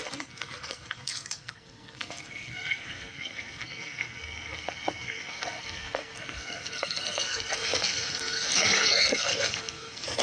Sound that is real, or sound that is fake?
fake